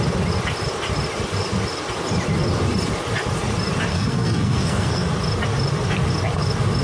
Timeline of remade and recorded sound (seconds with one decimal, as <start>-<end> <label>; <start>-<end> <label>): 0.0-3.9 recorded; 3.9-5.1 remade; 5.1-6.8 recorded